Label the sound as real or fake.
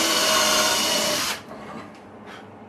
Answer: fake